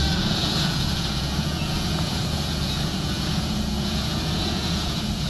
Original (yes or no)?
no